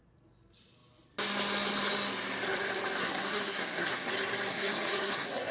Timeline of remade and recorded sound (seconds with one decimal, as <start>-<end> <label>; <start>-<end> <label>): 0.0-3.0 recorded; 3.0-4.1 remade; 4.1-4.5 recorded; 4.5-5.5 remade